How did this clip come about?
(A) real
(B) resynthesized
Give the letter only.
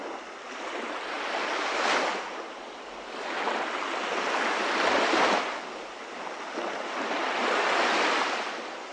A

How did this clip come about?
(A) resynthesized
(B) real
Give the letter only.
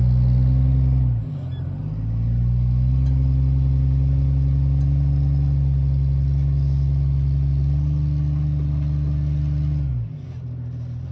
B